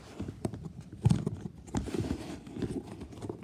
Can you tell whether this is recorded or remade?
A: recorded